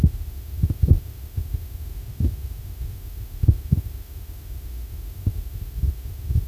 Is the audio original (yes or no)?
no